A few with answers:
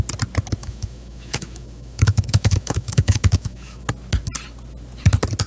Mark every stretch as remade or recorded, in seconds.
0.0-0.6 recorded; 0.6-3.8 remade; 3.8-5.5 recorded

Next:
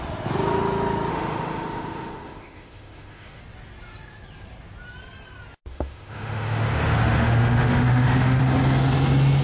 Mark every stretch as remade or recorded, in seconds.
0.0-1.1 recorded; 1.1-3.4 remade; 3.4-5.7 recorded; 5.7-8.4 remade; 8.4-9.4 recorded

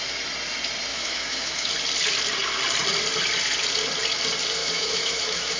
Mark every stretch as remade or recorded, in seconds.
0.0-0.9 recorded; 0.9-1.7 remade; 1.7-4.6 recorded; 4.6-5.6 remade

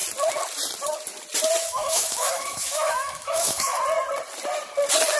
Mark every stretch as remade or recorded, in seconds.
0.0-1.6 recorded; 1.6-3.8 remade; 3.8-5.2 recorded

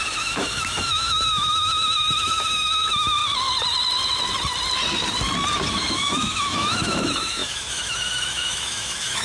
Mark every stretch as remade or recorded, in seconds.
0.0-3.2 remade; 3.2-5.7 recorded; 5.7-9.2 remade

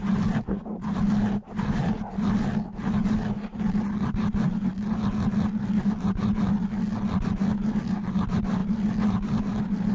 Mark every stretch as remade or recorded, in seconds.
0.0-9.9 recorded

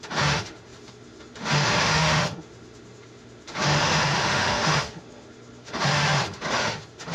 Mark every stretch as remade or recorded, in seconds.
0.0-7.1 remade

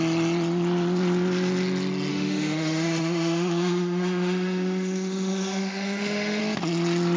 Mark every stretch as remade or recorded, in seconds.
0.0-2.1 recorded; 2.1-6.4 remade; 6.4-7.2 recorded